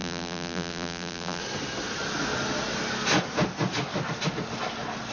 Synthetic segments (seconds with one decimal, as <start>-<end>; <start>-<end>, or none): 0.0-1.4